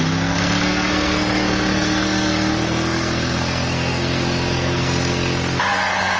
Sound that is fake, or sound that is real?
fake